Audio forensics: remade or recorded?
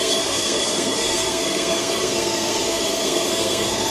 remade